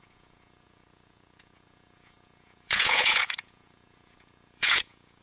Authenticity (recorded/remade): remade